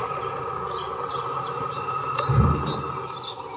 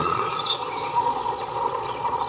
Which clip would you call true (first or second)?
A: first